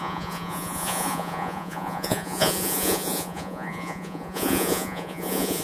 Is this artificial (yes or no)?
yes